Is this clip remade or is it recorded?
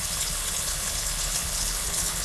remade